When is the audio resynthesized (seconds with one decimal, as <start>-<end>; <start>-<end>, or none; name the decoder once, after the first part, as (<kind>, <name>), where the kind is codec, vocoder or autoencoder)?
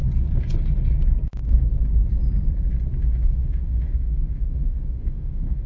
3.0-5.7 (autoencoder, DAC-VAE)